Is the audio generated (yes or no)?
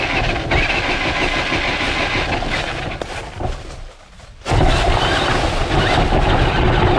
no